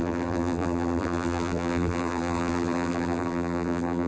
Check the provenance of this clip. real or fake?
fake